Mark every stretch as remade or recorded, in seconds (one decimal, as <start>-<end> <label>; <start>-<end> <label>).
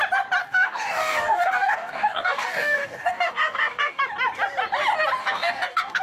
0.0-0.4 recorded; 0.4-4.0 remade; 4.0-5.2 recorded; 5.2-6.0 remade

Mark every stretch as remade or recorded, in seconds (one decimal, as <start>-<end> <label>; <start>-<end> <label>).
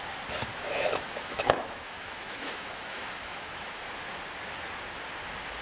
0.0-0.5 recorded; 0.5-3.9 remade; 3.9-5.6 recorded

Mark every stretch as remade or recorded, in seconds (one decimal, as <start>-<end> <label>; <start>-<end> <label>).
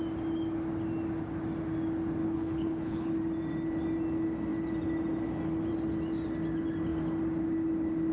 0.0-2.2 recorded; 2.2-3.1 remade; 3.1-8.1 recorded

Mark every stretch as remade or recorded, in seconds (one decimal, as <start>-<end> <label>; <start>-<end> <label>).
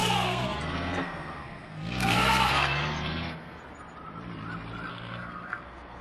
0.0-3.6 remade; 3.6-4.9 recorded; 4.9-6.0 remade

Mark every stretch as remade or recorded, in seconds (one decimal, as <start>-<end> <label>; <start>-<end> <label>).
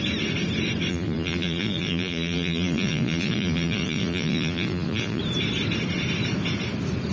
0.0-0.9 recorded; 0.9-5.2 remade; 5.2-7.1 recorded